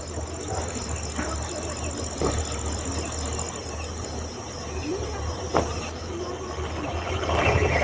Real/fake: real